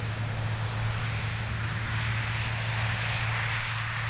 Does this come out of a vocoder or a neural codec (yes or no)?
no